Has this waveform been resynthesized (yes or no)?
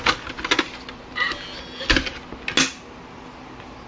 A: no